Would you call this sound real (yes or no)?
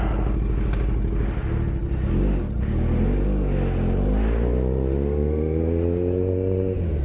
yes